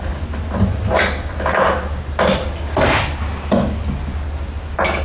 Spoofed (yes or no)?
no